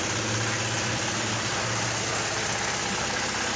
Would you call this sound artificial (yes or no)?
no